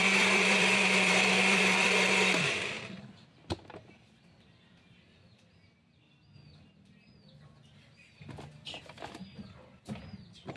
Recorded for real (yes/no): no